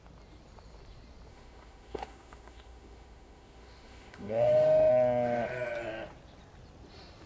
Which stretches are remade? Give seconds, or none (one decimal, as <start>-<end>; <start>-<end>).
1.3-4.9